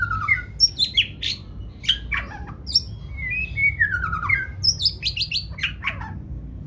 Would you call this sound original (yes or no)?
yes